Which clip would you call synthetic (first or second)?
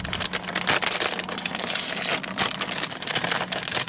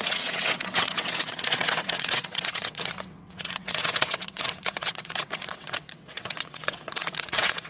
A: second